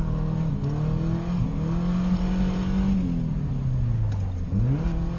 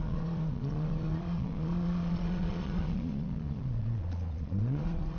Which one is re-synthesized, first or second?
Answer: second